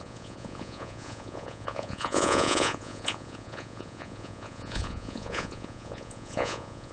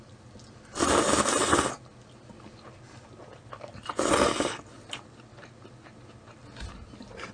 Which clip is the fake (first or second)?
first